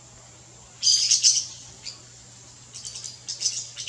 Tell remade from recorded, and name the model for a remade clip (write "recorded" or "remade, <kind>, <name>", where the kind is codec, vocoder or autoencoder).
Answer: recorded